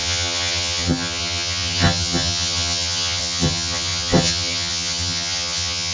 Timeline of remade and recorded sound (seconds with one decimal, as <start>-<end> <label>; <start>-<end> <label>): 0.0-5.9 remade